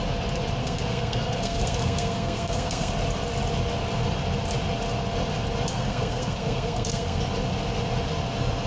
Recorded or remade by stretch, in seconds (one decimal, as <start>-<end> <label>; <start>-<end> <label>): 0.0-0.6 recorded; 0.6-2.9 remade; 2.9-5.7 recorded; 5.7-7.2 remade; 7.2-8.7 recorded